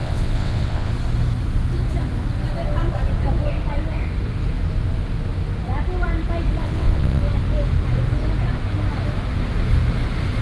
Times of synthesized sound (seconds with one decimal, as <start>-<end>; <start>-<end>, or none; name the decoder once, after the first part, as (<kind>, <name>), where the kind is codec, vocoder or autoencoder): 0.0-0.9 (vocoder, WaveNeXt); 6.6-7.2